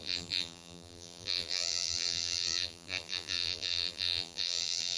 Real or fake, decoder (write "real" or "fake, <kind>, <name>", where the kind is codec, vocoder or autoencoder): fake, vocoder, BigVGAN v2